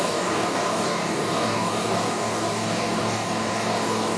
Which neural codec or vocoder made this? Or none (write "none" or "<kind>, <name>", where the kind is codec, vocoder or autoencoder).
codec, DAC